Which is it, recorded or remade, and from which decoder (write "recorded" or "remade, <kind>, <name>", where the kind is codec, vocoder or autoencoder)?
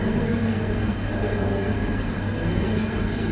remade, codec, SNAC